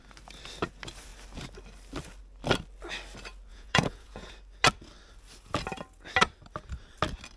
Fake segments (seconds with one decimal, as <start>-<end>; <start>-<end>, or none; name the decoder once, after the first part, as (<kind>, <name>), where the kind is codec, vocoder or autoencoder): 3.5-4.3 (vocoder, Vocos)